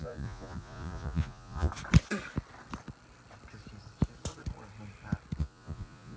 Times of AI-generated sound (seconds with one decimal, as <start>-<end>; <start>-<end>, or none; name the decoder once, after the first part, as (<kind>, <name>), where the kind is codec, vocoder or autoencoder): 0.0-1.7 (vocoder, Vocos); 5.4-6.2